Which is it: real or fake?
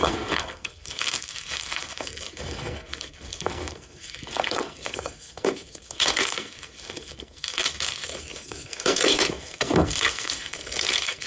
fake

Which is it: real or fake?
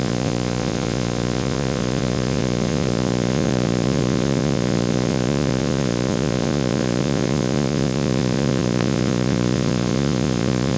fake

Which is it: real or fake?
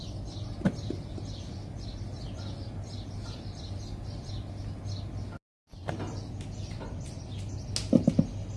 real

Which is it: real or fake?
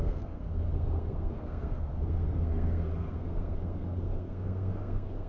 fake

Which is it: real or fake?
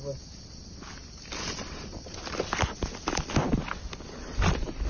real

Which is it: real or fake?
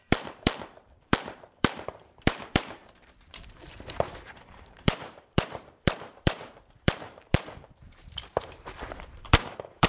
fake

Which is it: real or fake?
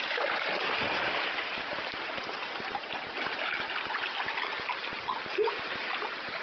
real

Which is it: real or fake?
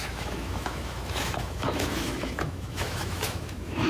fake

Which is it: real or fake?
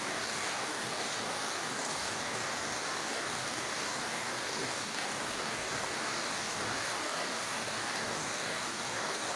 fake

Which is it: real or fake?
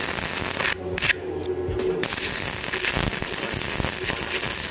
real